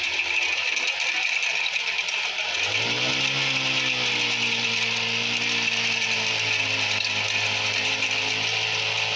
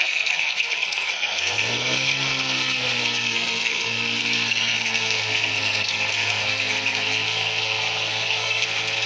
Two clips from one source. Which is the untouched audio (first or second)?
first